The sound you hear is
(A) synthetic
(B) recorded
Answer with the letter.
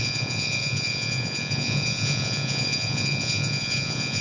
A